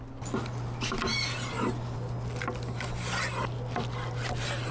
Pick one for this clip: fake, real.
real